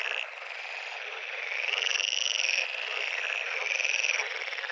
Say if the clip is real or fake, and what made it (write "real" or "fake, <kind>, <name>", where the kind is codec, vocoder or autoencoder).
fake, vocoder, BigVGAN v2